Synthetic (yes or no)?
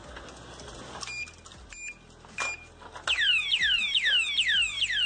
no